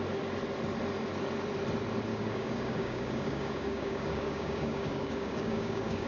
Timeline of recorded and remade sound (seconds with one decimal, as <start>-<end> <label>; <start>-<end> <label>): 0.0-2.1 recorded; 2.1-6.1 remade